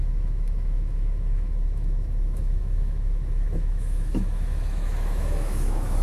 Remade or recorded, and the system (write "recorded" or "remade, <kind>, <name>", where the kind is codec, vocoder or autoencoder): remade, autoencoder, DAC-VAE